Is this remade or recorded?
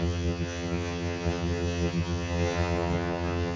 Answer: remade